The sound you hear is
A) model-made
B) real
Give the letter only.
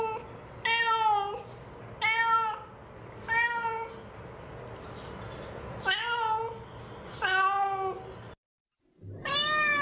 B